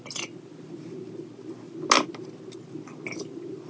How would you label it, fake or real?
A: real